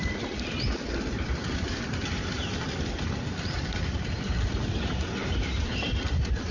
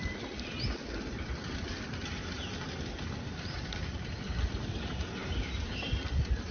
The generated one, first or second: first